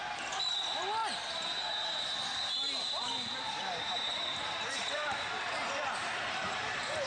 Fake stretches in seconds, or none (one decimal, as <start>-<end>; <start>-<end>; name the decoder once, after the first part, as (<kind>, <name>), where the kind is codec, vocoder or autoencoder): 3.3-5.4 (vocoder, BigVGAN v2); 6.4-7.1